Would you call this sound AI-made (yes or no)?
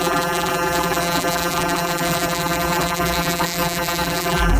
yes